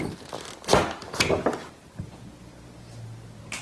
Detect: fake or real real